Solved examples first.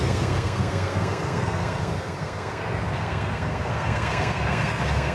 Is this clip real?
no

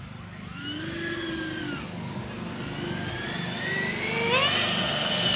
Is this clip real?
yes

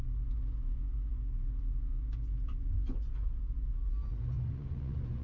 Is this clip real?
no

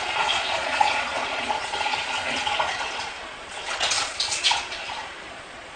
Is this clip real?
no